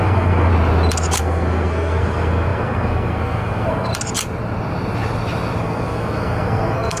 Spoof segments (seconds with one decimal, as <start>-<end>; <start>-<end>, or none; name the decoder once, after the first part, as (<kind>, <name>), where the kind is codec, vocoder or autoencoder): 0.0-0.5 (codec, SNAC); 1.2-3.9; 5.6-7.0